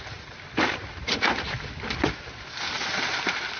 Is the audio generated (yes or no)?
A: no